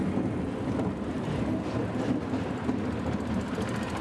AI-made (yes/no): no